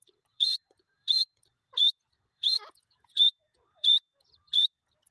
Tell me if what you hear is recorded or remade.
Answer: remade